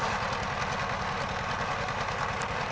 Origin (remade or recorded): recorded